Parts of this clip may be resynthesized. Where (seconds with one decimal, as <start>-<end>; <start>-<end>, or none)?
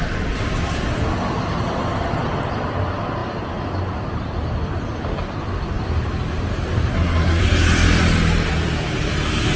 6.9-7.4